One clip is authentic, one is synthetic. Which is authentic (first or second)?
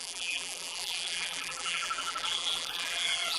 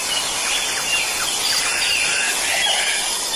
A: second